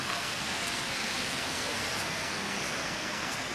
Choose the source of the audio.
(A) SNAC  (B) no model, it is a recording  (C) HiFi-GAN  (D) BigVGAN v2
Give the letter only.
A